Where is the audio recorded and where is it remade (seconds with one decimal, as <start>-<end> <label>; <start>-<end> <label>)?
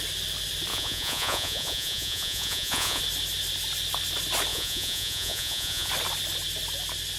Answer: 0.0-0.7 recorded; 0.7-3.0 remade; 3.0-4.5 recorded; 4.5-5.9 remade; 5.9-7.2 recorded